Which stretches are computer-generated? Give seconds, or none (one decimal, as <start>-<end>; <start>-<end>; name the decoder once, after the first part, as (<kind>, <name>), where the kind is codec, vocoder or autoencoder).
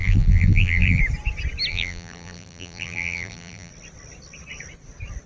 0.0-1.0 (vocoder, BigVGAN v2); 1.7-3.7